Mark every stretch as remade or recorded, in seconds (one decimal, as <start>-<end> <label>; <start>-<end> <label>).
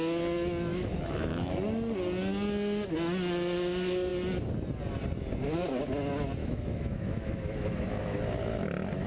0.0-0.7 recorded; 0.7-1.5 remade; 1.5-6.4 recorded; 6.4-8.0 remade; 8.0-9.1 recorded